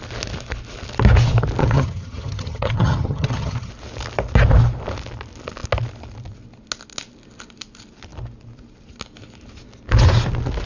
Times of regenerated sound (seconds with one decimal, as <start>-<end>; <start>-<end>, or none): 1.6-3.7

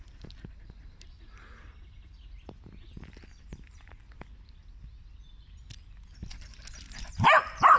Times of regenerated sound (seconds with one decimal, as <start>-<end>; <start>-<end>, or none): none